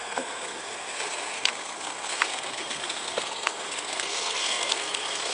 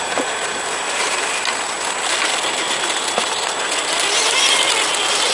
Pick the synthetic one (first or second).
first